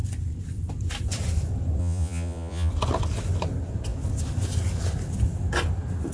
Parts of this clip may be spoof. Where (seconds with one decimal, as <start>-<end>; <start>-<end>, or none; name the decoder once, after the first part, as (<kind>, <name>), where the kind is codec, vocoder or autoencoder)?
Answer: 1.8-2.7 (vocoder, Vocos)

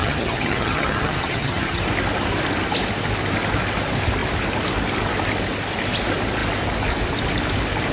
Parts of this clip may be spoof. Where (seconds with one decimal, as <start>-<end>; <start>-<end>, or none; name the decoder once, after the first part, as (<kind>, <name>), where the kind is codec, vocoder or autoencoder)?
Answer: 0.0-1.8 (vocoder, HiFi-GAN)

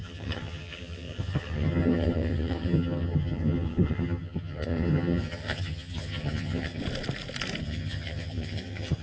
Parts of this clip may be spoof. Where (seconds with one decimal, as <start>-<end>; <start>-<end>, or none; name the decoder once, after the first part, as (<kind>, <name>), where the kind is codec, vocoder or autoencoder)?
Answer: 0.0-6.8 (vocoder, HiFi-GAN); 7.6-9.0

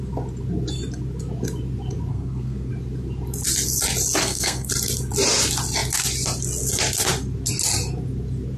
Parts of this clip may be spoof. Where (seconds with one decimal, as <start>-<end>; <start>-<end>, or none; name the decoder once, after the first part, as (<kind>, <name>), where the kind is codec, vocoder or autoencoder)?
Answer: 2.1-2.7 (codec, SNAC); 4.2-4.7

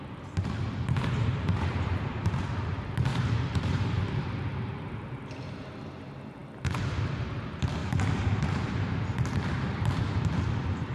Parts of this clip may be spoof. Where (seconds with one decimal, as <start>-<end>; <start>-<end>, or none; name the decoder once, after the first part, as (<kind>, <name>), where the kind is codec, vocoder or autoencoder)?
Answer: 1.3-2.4 (vocoder, BigVGAN v2); 3.1-5.2; 7.8-9.9

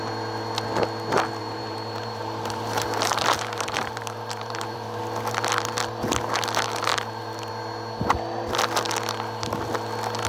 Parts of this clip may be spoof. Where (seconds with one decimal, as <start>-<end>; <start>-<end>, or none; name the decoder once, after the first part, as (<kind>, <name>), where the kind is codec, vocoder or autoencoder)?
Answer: 1.4-5.0 (vocoder, BigVGAN v2)

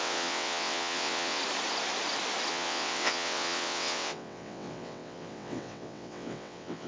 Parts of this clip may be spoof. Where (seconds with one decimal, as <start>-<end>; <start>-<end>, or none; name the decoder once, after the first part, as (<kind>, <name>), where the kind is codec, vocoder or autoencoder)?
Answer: 0.0-1.4 (vocoder, WaveNeXt); 2.5-6.9